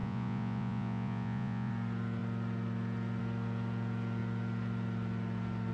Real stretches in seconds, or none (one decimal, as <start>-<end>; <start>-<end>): 1.7-5.7